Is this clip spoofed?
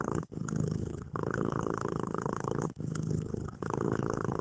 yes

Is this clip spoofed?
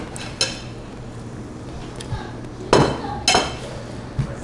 no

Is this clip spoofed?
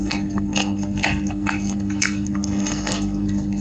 yes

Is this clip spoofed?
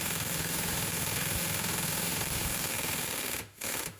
yes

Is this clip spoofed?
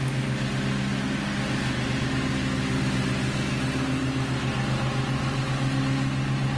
no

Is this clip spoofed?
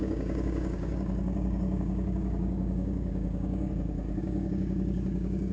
yes